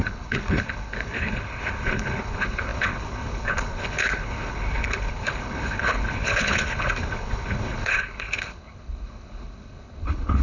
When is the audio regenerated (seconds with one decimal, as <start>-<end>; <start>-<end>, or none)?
0.0-10.4